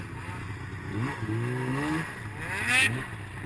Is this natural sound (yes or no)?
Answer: yes